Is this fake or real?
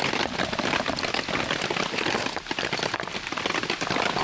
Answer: real